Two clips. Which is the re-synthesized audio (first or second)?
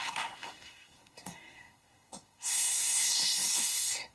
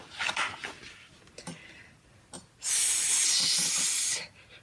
first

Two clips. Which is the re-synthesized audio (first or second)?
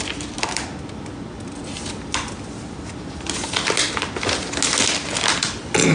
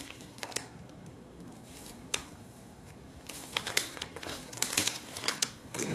second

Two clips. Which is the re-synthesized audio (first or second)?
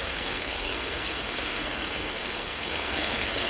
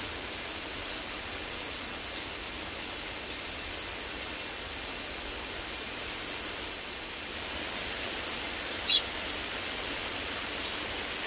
first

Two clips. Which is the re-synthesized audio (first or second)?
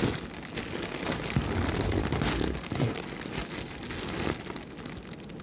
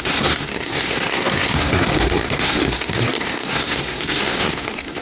second